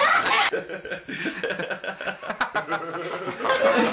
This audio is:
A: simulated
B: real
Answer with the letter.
B